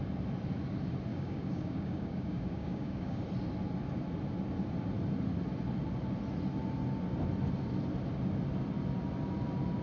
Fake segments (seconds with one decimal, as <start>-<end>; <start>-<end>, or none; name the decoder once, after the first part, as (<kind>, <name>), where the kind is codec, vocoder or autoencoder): 1.1-3.2 (codec, DAC)